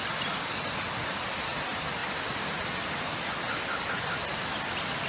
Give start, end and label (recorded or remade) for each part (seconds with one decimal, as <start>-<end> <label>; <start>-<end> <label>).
0.0-5.1 recorded